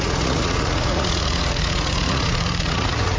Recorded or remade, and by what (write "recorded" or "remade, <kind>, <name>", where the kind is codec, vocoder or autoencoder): remade, vocoder, Vocos